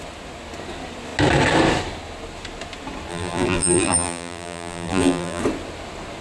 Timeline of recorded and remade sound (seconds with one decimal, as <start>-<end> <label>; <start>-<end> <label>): 0.0-3.1 recorded; 3.1-5.4 remade; 5.4-6.2 recorded